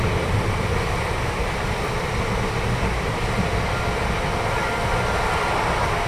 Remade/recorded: recorded